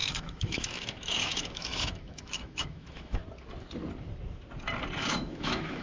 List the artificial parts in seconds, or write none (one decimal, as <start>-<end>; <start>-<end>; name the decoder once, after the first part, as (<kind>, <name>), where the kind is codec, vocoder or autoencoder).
0.0-3.2 (autoencoder, DAC-VAE); 5.0-5.8